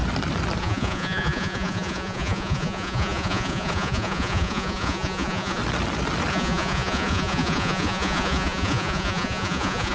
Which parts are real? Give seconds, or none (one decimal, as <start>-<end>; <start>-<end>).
0.0-0.6; 5.6-6.3